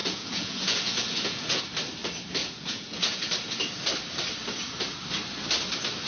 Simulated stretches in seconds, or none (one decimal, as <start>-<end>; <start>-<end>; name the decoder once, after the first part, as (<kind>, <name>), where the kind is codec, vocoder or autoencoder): 0.0-1.6 (vocoder, Vocos); 2.4-3.3